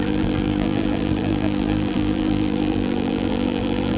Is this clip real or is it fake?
fake